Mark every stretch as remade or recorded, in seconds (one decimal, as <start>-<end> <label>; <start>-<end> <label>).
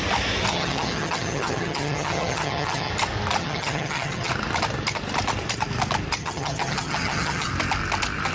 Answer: 0.0-0.5 recorded; 0.5-2.9 remade; 2.9-3.4 recorded; 3.4-4.3 remade; 4.3-6.2 recorded; 6.2-7.5 remade; 7.5-8.3 recorded